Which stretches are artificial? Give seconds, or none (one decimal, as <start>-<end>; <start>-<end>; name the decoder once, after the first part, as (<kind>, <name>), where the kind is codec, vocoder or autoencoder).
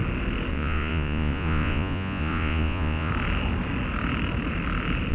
0.5-3.1 (vocoder, Vocos)